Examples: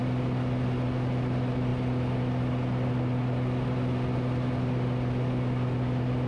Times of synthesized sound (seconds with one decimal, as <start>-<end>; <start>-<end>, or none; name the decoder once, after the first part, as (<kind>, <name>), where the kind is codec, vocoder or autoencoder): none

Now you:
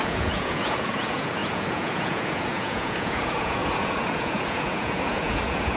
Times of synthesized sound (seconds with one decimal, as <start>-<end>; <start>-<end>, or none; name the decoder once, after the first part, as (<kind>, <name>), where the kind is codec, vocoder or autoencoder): 0.0-5.8 (vocoder, Vocos)

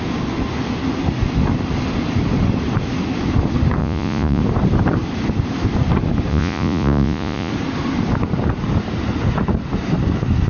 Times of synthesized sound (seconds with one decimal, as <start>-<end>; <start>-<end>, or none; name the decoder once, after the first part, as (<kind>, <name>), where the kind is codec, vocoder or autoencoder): 3.8-4.4 (vocoder, Vocos); 6.3-7.5